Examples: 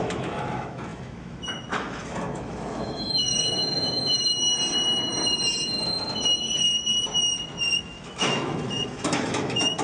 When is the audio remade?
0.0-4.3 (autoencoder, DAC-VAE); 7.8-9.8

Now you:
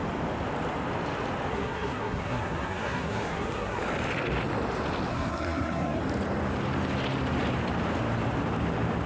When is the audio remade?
1.5-3.8 (codec, SNAC); 5.1-6.0

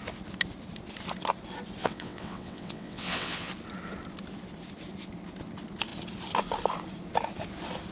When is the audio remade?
1.8-3.5 (vocoder, WaveNeXt)